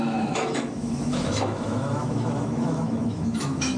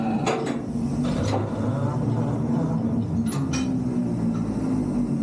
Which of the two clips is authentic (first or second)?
second